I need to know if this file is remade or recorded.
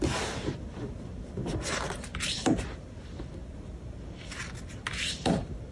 recorded